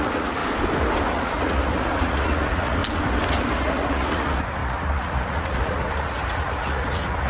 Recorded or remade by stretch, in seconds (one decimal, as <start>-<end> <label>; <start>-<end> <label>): 0.0-0.4 remade; 0.4-1.1 recorded; 1.1-2.8 remade; 2.8-3.5 recorded; 3.5-7.3 remade